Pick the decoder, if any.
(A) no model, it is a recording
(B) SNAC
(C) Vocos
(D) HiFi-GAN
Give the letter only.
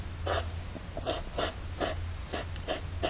A